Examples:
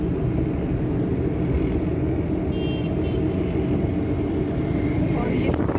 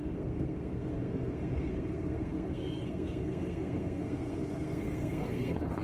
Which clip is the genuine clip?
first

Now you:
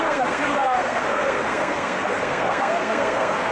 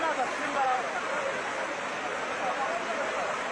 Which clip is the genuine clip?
second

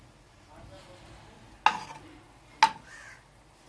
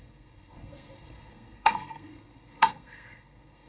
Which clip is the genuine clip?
first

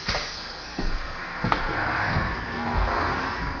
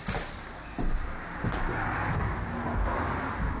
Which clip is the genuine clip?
second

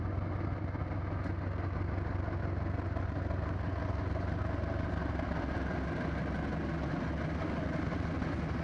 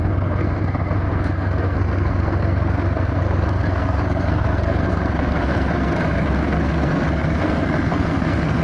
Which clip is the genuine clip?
first